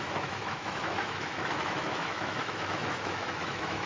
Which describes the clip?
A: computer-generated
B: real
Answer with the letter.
A